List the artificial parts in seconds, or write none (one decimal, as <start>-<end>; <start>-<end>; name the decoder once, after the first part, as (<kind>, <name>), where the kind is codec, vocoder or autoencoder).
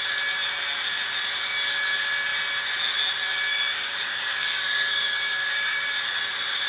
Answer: 3.5-6.2 (codec, DAC)